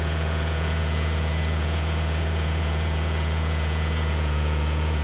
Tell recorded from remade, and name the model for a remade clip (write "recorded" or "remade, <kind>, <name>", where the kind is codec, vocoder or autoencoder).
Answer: remade, vocoder, Vocos